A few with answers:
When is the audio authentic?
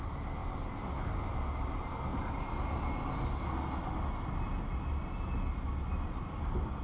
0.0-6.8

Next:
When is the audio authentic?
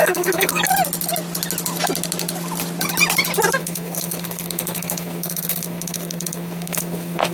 0.7-3.6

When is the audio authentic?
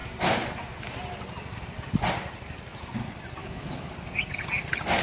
0.0-3.4; 3.9-5.0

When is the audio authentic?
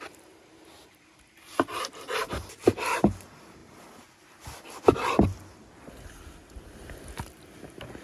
0.0-8.0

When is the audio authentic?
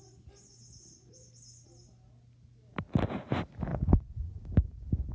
0.0-3.7; 4.4-5.1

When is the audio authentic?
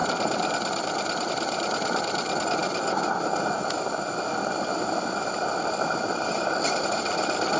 1.3-7.6